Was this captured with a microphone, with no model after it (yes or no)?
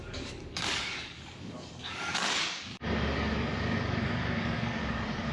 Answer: no